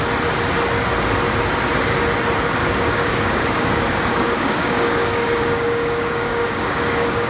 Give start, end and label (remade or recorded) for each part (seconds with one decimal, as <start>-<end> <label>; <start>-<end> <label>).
0.0-2.6 recorded; 2.6-7.3 remade